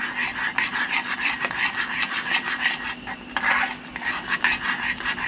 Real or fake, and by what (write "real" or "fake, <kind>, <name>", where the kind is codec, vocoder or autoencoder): real